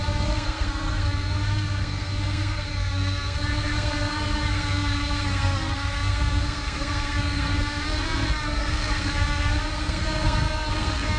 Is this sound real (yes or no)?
no